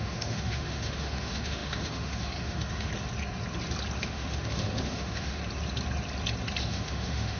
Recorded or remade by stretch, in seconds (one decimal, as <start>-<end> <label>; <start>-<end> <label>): 0.0-2.9 remade; 2.9-4.0 recorded; 4.0-5.4 remade; 5.4-6.6 recorded; 6.6-7.4 remade